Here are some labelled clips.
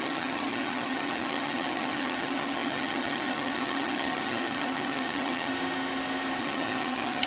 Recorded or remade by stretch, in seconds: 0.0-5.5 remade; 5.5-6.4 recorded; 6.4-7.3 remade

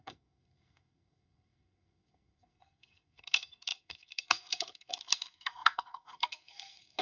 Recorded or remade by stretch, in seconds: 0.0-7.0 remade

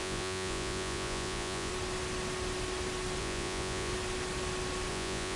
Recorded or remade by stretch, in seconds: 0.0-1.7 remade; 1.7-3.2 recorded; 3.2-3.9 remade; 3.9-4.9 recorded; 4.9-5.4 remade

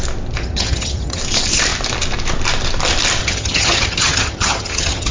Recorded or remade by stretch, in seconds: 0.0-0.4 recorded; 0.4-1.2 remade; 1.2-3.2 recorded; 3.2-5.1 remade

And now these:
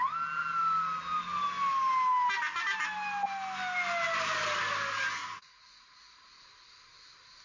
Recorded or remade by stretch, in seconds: 0.0-5.2 recorded; 5.2-6.4 remade; 6.4-7.4 recorded

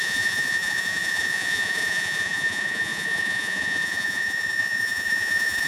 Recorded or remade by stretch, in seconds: 0.0-5.7 remade

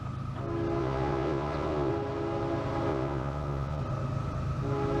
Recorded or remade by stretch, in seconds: 0.0-0.8 recorded; 0.8-1.9 remade; 1.9-2.9 recorded; 2.9-3.8 remade; 3.8-5.0 recorded

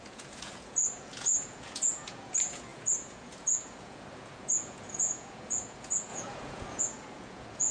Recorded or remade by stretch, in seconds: 0.0-7.7 remade